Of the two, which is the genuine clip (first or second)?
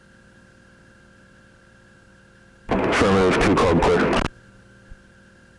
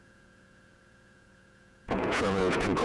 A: first